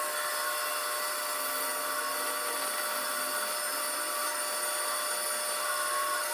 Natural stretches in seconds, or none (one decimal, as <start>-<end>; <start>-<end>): 0.0-6.3